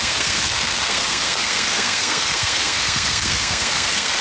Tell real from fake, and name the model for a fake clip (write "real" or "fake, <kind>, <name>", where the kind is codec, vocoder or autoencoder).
fake, codec, SNAC